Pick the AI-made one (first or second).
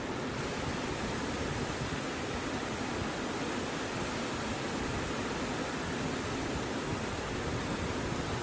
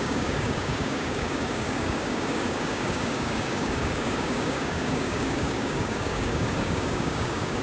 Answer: second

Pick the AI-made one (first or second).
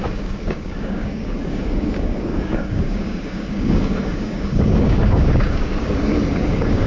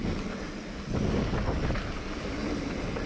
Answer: first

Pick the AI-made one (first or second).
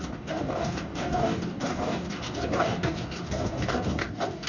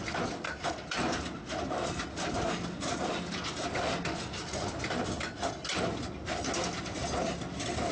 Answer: first